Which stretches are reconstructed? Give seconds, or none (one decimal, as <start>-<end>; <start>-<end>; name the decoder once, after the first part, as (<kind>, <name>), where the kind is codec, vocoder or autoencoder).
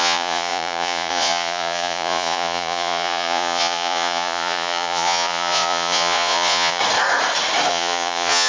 0.0-6.8 (vocoder, Vocos); 7.7-8.5